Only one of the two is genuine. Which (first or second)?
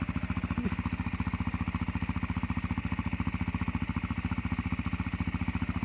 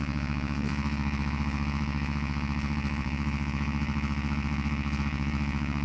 first